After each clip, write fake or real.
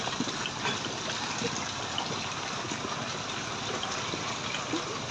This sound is real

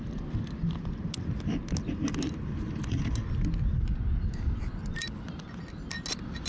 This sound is real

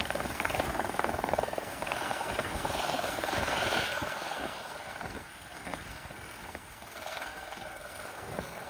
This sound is fake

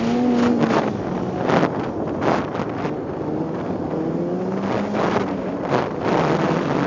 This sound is real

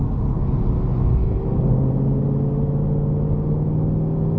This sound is real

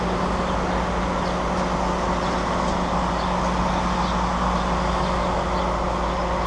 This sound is real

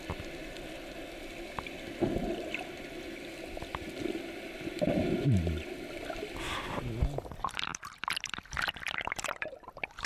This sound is real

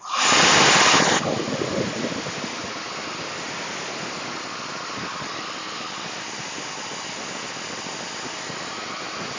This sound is real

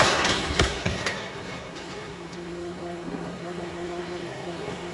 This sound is fake